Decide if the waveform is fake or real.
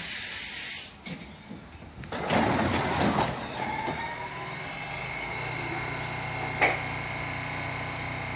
real